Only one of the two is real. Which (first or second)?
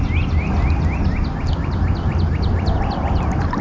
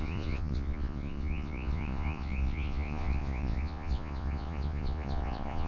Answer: first